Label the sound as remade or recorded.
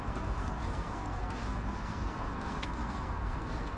remade